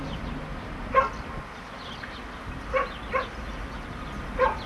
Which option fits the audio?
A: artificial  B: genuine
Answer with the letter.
B